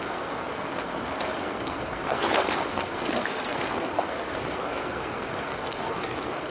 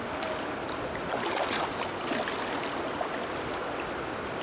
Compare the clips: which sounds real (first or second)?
second